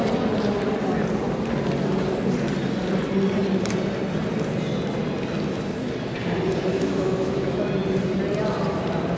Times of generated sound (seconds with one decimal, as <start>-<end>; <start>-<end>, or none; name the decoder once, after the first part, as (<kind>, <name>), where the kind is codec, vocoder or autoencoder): 6.7-7.7 (autoencoder, DAC-VAE)